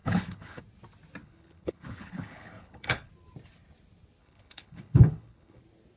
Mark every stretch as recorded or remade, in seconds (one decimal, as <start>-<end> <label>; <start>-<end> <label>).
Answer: 0.0-0.6 remade; 0.6-1.2 recorded; 1.2-3.1 remade; 3.1-4.2 recorded; 4.2-5.6 remade; 5.6-6.0 recorded